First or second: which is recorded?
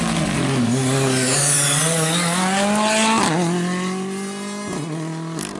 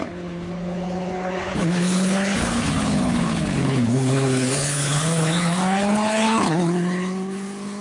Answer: first